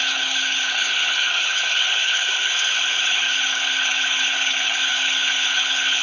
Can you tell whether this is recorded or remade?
remade